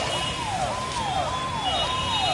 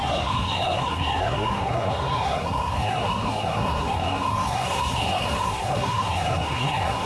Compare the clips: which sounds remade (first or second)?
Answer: second